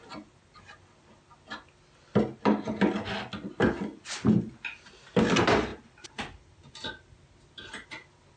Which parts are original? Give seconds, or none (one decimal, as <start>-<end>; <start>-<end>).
0.0-5.7; 6.7-8.4